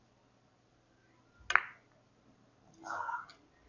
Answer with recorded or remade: recorded